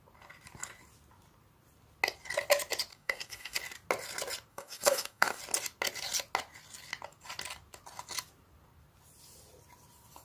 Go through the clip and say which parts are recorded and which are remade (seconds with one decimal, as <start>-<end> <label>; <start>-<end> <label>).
0.0-2.9 recorded; 2.9-3.6 remade; 3.6-4.5 recorded; 4.5-5.4 remade; 5.4-10.2 recorded